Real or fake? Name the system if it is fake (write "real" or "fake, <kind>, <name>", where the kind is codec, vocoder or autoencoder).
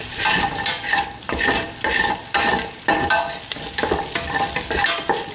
fake, vocoder, BigVGAN v2